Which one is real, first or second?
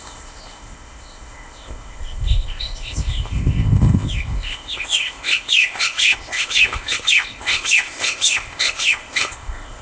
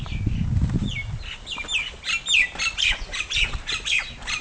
second